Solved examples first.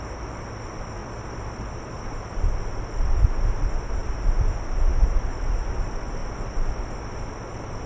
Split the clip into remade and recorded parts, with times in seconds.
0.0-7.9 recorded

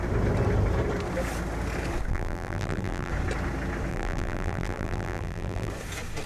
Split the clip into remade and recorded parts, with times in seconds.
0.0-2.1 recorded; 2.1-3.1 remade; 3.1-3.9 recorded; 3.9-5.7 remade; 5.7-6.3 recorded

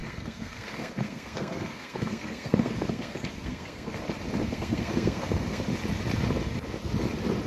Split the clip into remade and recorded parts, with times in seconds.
0.0-4.0 remade; 4.0-4.4 recorded; 4.4-5.6 remade; 5.6-7.5 recorded